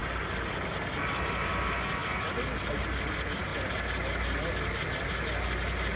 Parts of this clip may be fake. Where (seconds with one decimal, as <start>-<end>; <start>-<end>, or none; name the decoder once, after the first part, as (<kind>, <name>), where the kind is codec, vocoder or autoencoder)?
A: none